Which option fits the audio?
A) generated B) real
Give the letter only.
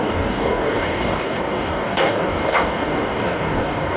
A